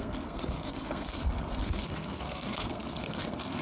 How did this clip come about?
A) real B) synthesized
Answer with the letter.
B